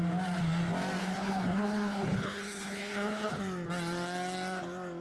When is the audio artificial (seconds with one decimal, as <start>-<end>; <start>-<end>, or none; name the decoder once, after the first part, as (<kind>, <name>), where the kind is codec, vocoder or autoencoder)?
1.0-3.4 (codec, HILCodec)